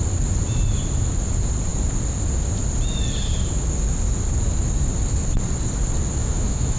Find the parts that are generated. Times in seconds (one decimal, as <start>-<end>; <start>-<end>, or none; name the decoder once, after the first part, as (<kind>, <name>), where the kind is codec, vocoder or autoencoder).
6.2-6.8 (autoencoder, DAC-VAE)